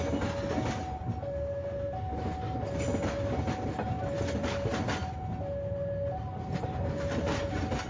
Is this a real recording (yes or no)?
yes